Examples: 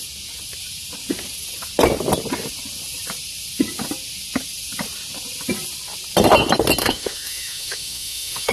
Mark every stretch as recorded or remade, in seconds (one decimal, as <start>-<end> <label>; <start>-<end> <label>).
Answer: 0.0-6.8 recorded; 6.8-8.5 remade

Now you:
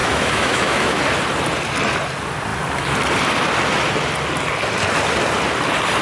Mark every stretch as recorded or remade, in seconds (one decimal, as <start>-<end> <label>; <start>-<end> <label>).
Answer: 0.0-1.0 remade; 1.0-6.0 recorded

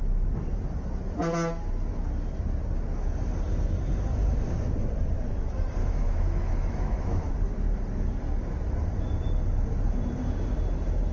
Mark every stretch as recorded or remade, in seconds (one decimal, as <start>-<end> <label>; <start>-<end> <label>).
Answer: 0.0-5.8 recorded; 5.8-7.3 remade; 7.3-11.1 recorded

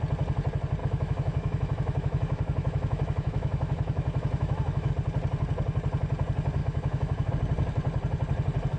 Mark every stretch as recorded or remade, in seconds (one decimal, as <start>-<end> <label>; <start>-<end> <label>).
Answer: 0.0-0.8 recorded; 0.8-4.9 remade; 4.9-6.6 recorded; 6.6-7.3 remade; 7.3-8.8 recorded

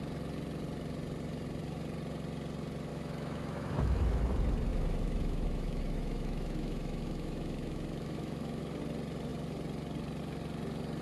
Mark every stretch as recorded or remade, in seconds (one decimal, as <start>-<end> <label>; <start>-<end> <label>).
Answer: 0.0-2.9 recorded; 2.9-4.3 remade; 4.3-4.7 recorded; 4.7-8.8 remade; 8.8-11.0 recorded